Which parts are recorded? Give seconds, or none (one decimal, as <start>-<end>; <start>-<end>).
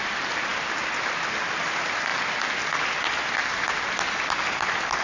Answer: 0.0-5.0